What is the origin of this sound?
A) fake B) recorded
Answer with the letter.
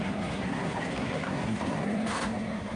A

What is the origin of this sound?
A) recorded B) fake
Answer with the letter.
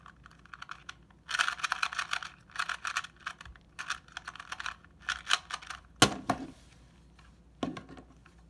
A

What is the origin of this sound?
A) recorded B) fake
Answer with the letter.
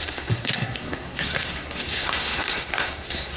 B